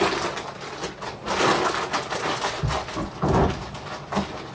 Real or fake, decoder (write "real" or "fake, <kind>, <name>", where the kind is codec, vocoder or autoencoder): real